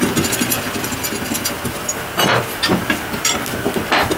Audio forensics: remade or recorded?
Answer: recorded